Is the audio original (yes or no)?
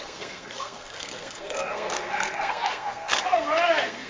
no